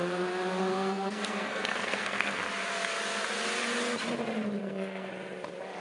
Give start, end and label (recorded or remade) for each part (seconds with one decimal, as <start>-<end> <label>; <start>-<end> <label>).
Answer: 0.0-0.7 recorded; 0.7-2.4 remade; 2.4-4.6 recorded; 4.6-5.1 remade; 5.1-5.8 recorded